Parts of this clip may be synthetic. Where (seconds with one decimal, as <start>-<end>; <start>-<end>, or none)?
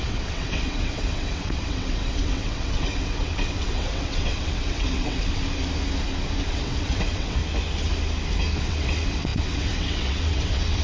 0.0-5.4; 6.5-7.4; 8.6-10.8